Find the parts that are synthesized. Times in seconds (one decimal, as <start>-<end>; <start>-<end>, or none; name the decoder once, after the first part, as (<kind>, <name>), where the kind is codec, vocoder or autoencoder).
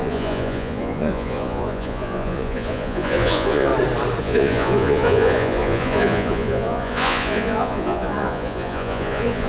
0.0-3.7 (vocoder, Vocos); 4.2-9.5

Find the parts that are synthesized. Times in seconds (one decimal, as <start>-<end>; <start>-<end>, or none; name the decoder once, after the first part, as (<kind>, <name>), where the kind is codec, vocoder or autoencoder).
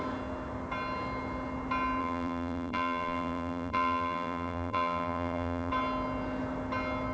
2.0-5.7 (vocoder, BigVGAN v2)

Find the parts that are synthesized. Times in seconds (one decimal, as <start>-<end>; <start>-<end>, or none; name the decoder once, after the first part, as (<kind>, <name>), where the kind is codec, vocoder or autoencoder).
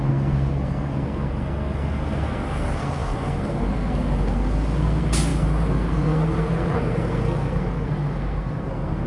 0.0-9.1 (codec, SNAC)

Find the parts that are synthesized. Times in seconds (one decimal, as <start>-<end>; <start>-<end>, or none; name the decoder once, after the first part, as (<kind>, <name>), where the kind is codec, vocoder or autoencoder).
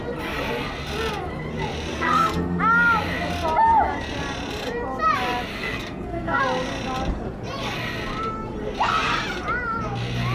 1.9-2.6 (codec, SNAC); 5.5-6.4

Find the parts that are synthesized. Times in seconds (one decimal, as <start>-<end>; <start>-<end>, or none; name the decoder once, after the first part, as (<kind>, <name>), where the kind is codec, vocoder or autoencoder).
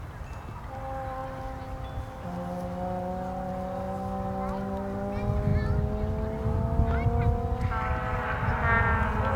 none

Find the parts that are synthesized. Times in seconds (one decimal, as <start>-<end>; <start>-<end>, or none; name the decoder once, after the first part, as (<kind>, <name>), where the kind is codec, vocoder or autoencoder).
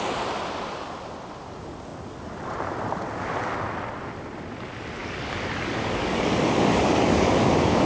5.0-7.9 (codec, DAC)